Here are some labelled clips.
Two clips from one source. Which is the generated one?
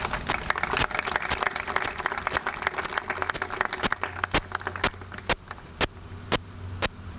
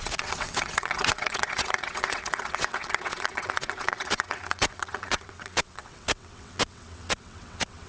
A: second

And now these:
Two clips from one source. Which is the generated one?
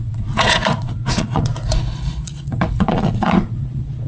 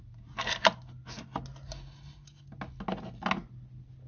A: first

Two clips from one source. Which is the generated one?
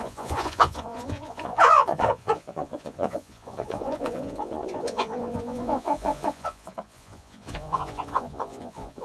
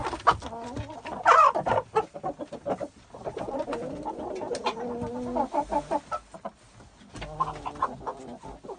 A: first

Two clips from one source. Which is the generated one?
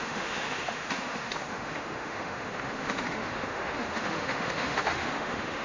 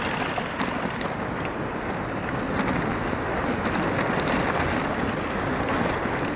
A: first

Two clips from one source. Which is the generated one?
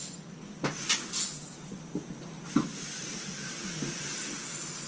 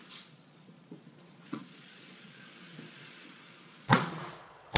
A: second